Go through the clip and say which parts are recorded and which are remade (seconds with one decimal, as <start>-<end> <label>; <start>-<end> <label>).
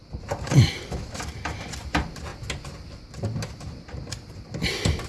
0.0-5.1 recorded